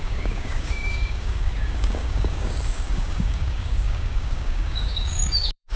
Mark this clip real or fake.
fake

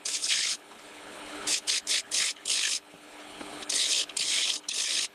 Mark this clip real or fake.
fake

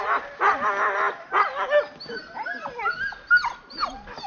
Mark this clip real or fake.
real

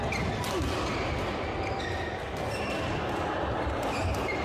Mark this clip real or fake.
real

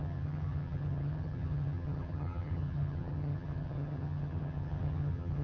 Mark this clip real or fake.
fake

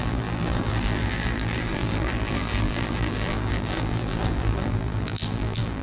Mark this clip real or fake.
fake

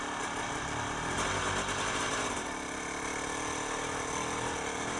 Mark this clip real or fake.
real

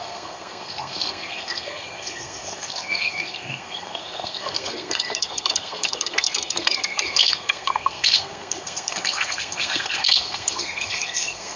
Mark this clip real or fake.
fake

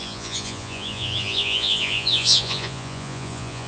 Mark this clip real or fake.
fake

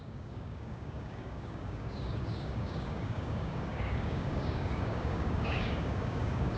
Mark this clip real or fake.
fake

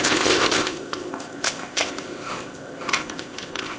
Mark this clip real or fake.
fake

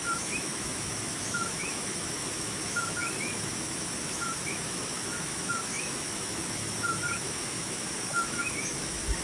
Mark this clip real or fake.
fake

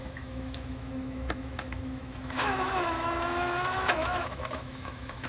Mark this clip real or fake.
fake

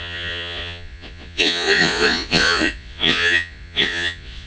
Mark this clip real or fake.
fake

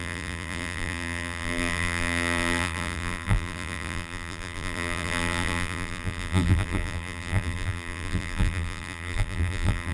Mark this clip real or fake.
fake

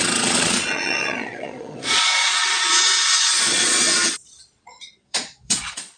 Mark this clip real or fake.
fake